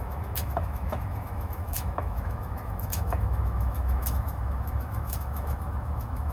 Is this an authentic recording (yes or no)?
no